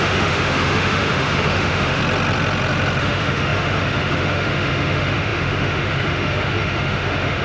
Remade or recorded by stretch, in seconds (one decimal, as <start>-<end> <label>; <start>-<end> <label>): 0.0-2.0 remade; 2.0-3.0 recorded; 3.0-7.4 remade